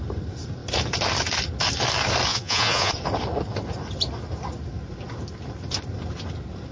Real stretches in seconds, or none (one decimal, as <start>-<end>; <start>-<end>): 0.0-2.3; 2.9-6.7

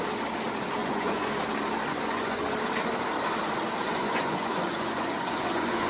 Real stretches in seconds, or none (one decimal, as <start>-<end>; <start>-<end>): 0.0-0.8; 1.3-1.9; 2.4-3.8

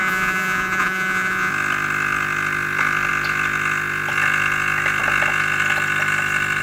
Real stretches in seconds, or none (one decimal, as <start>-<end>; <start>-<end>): 1.5-6.6

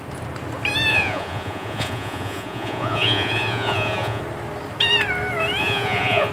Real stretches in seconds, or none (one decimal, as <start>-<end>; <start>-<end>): 0.0-0.9; 4.2-5.6

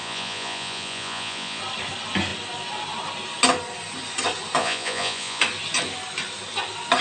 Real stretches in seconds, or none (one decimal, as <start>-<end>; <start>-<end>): 1.6-4.6; 5.4-7.0

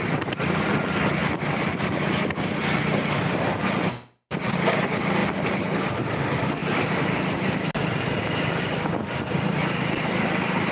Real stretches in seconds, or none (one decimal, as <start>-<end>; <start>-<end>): 0.0-10.7